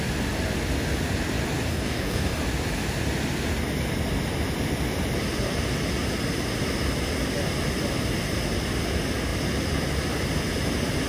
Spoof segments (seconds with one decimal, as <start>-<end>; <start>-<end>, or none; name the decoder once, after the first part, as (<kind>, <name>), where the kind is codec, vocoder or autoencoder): 1.7-2.4 (codec, DAC)